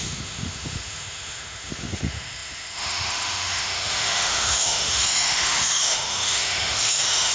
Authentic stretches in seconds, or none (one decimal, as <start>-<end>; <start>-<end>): none